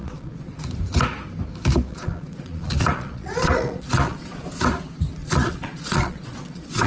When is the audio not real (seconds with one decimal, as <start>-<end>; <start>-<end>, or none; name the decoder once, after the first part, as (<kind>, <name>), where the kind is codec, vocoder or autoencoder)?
0.0-0.5 (vocoder, Vocos); 1.9-4.6; 5.2-6.9

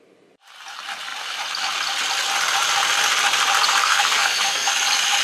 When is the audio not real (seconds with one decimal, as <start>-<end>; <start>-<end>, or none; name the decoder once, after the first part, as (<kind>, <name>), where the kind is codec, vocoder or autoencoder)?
3.8-4.7 (codec, SNAC)

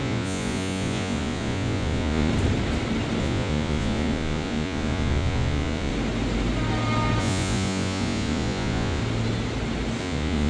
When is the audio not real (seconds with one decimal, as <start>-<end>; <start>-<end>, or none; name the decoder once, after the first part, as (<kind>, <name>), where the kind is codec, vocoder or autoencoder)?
0.0-2.3 (vocoder, Vocos); 3.2-5.9; 7.2-9.0; 10.0-10.5

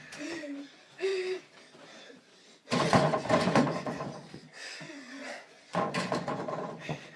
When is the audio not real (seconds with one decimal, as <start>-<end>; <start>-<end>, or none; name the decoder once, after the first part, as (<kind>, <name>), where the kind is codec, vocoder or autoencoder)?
0.0-1.1 (vocoder, Vocos); 2.5-7.2

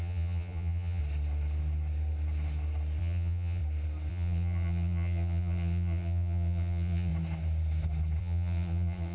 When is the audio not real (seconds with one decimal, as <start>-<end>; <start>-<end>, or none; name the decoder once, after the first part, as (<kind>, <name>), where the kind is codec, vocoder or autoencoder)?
0.0-1.0 (vocoder, Vocos); 3.0-3.6; 4.1-7.1; 8.2-9.1

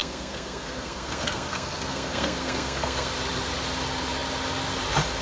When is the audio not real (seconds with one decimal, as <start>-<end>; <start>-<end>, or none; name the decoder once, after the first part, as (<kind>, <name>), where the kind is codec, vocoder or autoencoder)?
0.0-3.1 (codec, SNAC)

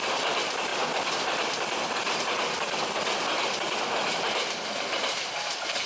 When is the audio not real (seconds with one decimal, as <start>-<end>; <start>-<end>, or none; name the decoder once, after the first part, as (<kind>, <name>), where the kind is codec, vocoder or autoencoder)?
none

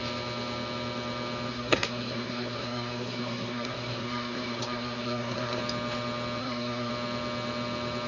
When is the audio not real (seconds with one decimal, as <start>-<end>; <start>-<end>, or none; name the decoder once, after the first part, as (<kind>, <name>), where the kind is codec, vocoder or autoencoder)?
1.5-5.6 (codec, SNAC); 6.4-6.9